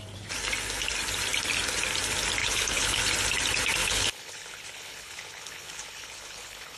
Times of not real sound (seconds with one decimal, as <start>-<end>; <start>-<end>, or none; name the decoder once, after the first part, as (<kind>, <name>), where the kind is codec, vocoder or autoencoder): 2.4-3.0 (codec, HILCodec); 3.8-6.8